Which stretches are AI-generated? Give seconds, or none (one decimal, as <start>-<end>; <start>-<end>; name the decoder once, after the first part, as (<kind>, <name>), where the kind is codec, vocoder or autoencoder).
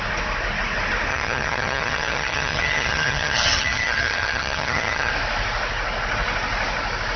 1.1-5.1 (vocoder, HiFi-GAN)